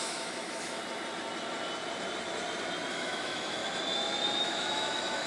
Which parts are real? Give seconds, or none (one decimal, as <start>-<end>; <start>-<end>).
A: 0.8-2.9; 3.6-4.4